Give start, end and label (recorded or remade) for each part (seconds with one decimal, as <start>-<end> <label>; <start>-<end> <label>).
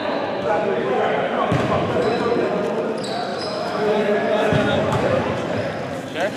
0.0-2.1 remade; 2.1-3.3 recorded; 3.3-5.2 remade; 5.2-6.4 recorded